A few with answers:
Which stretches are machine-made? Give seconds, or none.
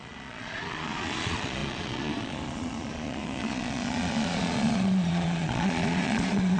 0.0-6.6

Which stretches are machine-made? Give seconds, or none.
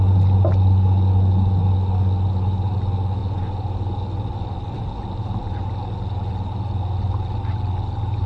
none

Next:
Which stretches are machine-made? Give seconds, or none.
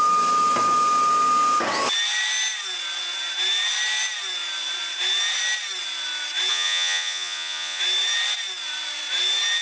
6.5-7.8